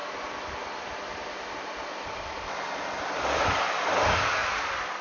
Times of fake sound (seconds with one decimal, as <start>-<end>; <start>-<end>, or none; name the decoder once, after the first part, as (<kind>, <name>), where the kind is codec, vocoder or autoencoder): none